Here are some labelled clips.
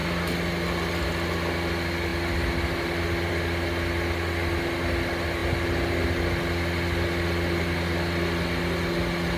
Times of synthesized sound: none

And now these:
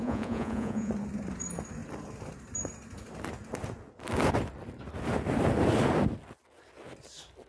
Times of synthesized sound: 0.0-0.9 (vocoder, Vocos)